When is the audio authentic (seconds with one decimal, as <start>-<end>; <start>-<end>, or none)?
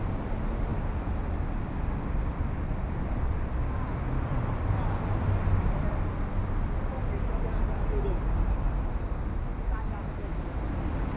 0.0-11.2